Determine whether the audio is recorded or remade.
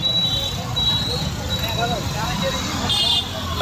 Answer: recorded